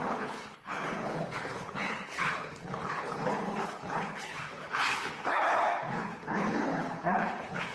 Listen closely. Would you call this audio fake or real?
fake